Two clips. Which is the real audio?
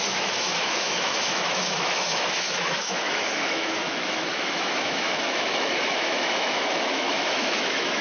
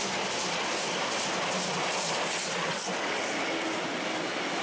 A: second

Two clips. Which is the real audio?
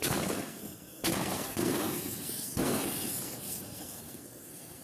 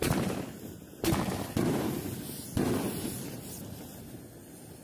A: second